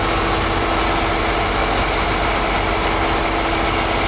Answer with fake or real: real